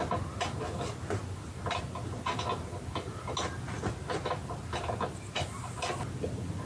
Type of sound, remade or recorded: recorded